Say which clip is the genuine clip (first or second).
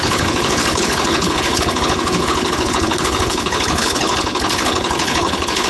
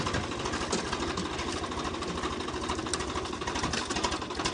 second